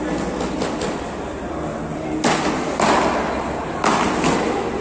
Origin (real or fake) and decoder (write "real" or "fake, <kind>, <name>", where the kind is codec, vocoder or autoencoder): real